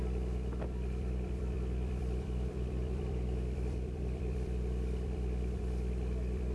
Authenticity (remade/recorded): remade